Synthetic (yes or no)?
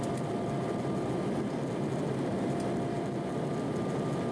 no